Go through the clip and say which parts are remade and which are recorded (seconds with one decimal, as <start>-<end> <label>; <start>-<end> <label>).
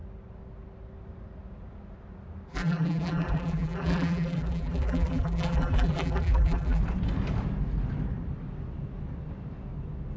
0.0-2.5 recorded; 2.5-6.8 remade; 6.8-10.2 recorded